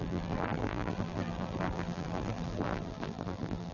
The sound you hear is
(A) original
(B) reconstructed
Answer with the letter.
B